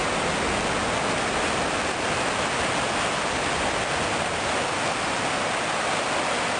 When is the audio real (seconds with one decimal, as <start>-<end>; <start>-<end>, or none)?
0.0-6.6